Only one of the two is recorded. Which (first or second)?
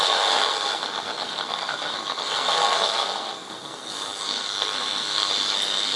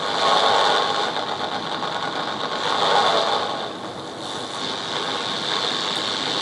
second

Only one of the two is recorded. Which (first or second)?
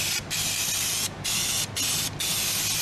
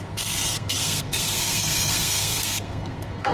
first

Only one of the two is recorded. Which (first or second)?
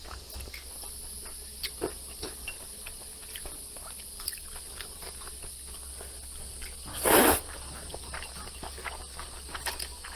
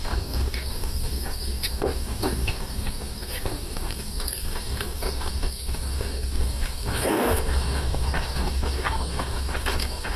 first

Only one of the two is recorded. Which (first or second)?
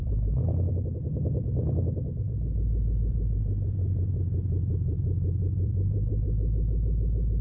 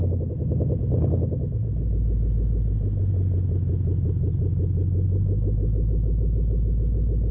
second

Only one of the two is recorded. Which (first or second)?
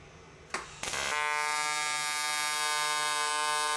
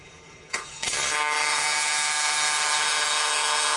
first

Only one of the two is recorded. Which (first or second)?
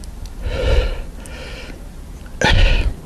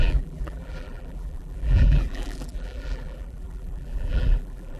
first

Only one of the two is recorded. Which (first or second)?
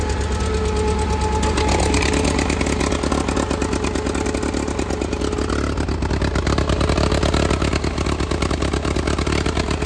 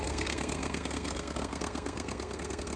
first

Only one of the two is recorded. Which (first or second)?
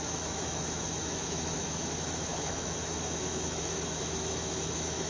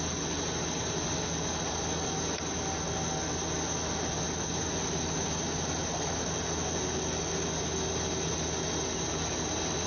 second